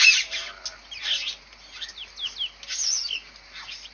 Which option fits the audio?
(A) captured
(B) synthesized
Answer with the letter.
A